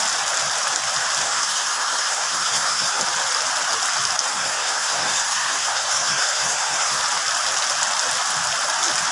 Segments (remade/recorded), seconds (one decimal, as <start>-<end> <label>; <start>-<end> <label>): 0.0-1.2 recorded; 1.2-3.0 remade; 3.0-4.3 recorded; 4.3-7.0 remade; 7.0-9.1 recorded